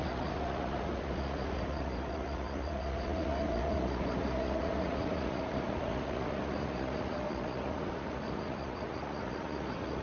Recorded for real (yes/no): no